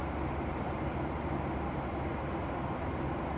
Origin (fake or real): real